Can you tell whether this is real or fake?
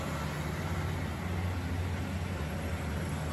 real